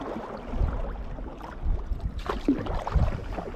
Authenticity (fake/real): real